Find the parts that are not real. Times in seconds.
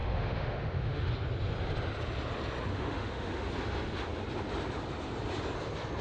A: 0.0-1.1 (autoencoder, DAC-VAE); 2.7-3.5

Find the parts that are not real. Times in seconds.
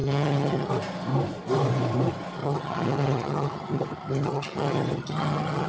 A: 0.0-0.7 (vocoder, HiFi-GAN); 2.4-5.7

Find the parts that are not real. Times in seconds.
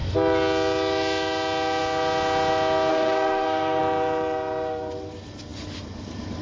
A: 2.9-3.8 (codec, SNAC)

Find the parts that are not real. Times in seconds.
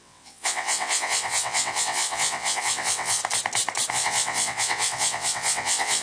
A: 0.0-3.2 (vocoder, WaveNeXt); 3.9-6.0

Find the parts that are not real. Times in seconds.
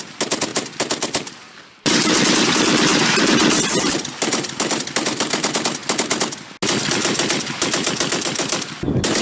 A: 0.0-5.8 (vocoder, BigVGAN v2); 8.1-9.2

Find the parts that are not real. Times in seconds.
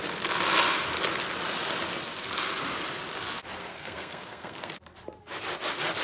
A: 3.6-4.7 (codec, SNAC)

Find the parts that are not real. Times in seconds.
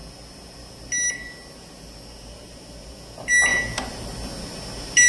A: none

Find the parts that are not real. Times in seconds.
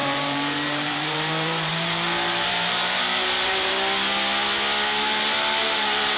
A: 0.0-3.7 (vocoder, BigVGAN v2); 5.1-6.2